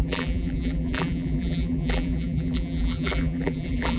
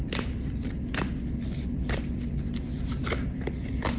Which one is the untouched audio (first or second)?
second